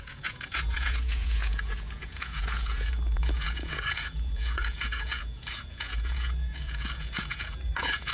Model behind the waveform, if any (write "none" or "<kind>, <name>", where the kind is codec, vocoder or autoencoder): vocoder, Vocos